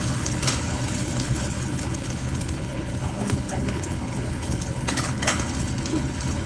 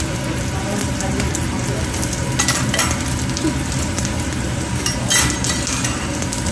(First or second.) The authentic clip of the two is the second